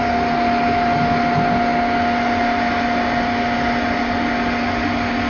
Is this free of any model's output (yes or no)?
yes